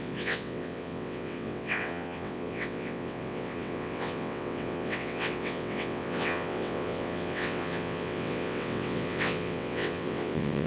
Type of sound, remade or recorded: remade